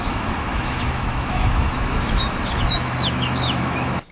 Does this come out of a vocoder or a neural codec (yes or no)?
yes